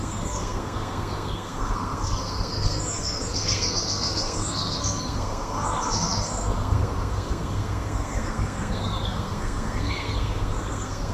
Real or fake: fake